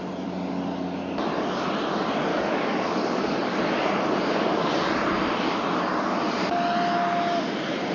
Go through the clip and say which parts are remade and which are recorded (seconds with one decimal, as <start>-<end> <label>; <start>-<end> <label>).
0.0-2.3 recorded; 2.3-3.6 remade; 3.6-7.9 recorded